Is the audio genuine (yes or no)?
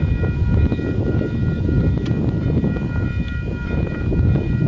yes